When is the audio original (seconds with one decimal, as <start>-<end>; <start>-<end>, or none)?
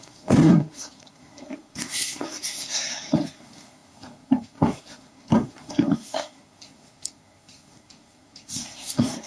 none